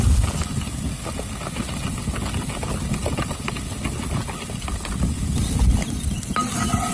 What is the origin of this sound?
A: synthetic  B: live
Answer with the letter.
B